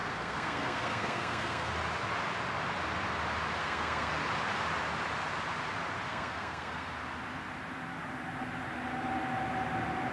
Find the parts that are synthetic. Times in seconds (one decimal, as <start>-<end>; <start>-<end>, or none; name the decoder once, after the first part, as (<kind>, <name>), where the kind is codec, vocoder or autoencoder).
0.0-1.7 (codec, SNAC); 3.6-4.1; 6.1-6.9